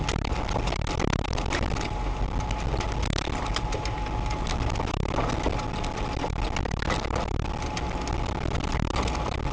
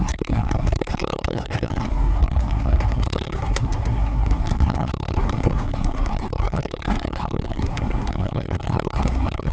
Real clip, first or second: first